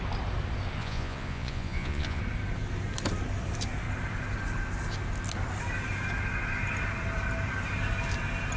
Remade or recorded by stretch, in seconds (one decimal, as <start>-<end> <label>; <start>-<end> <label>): 0.0-0.8 recorded; 0.8-2.2 remade; 2.2-8.6 recorded